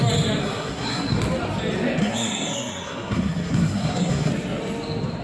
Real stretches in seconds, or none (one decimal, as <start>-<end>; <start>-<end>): 0.0-0.4; 1.2-2.0; 4.3-5.2